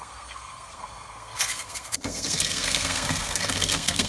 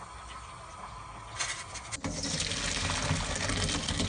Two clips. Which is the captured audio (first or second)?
second